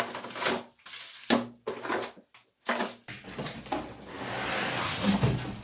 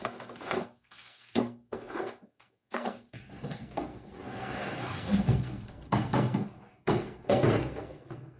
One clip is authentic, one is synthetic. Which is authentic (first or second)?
first